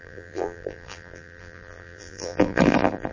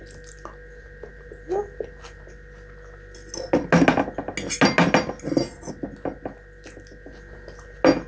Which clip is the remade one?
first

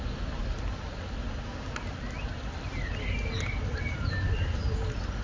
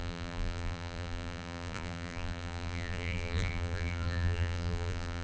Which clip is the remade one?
second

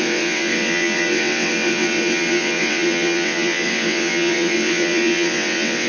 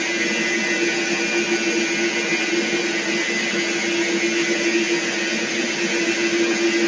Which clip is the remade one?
first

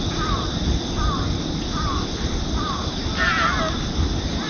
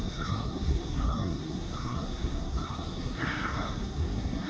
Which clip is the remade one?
second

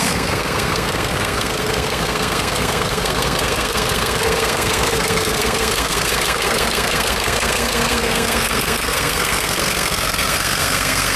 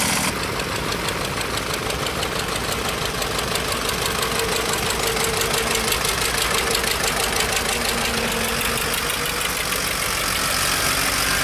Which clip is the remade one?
first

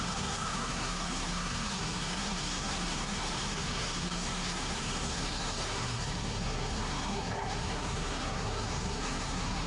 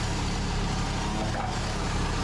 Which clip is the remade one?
first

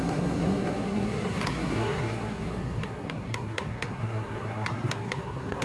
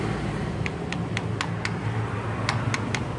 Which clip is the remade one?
first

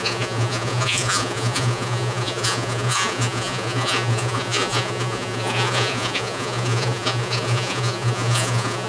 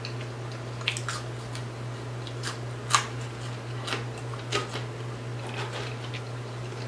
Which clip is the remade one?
first